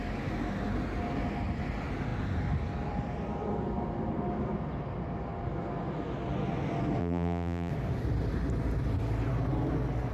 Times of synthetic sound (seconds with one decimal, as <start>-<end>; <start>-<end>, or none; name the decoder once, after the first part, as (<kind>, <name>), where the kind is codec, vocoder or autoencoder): 7.0-7.7 (vocoder, BigVGAN v2)